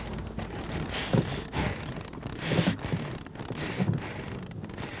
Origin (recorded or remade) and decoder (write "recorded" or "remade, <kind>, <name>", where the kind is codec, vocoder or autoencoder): recorded